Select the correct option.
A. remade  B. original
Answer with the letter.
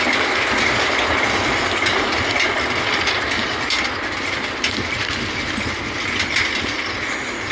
B